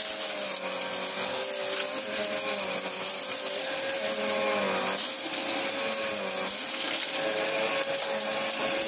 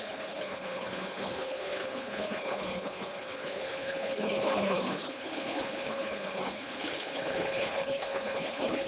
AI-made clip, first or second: second